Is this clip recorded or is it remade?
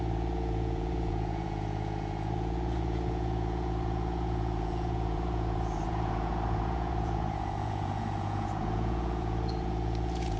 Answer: remade